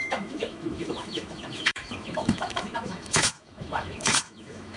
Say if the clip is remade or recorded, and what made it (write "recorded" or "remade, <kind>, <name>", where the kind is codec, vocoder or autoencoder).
remade, autoencoder, DAC-VAE